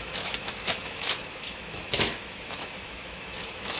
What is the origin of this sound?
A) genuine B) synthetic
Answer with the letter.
B